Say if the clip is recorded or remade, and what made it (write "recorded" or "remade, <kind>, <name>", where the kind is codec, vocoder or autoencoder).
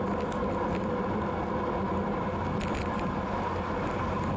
recorded